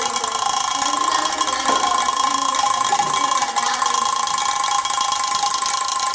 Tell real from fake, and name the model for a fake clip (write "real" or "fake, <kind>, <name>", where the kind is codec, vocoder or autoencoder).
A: real